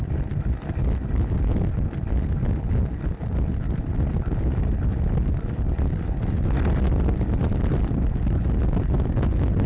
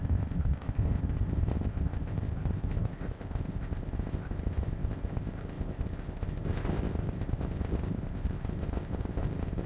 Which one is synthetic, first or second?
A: second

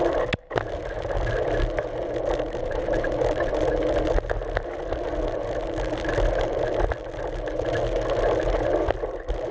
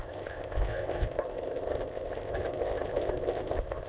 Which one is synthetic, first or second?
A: second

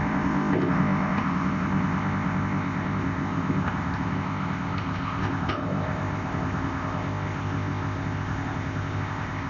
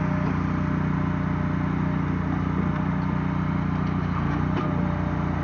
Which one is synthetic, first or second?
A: first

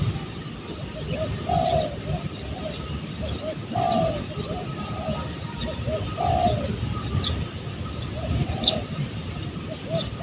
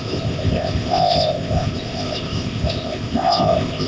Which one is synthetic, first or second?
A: second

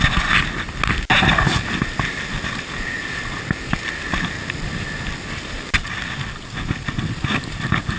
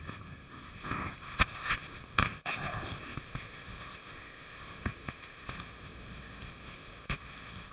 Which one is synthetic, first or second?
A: second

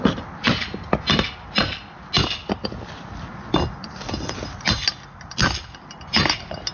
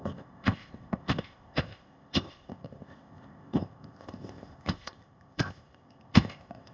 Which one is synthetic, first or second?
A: second